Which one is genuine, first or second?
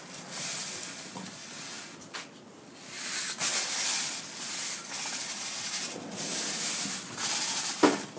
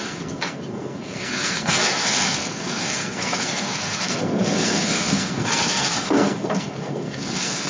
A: first